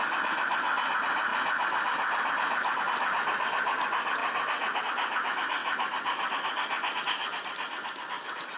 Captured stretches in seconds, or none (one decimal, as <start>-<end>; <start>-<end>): 0.0-8.6